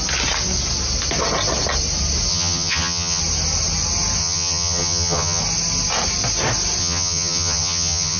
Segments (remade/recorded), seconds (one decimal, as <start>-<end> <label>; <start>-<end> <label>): 0.0-2.3 recorded; 2.3-3.2 remade; 3.2-4.2 recorded; 4.2-5.4 remade; 5.4-6.8 recorded; 6.8-8.2 remade